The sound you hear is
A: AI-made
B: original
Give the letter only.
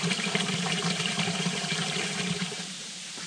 A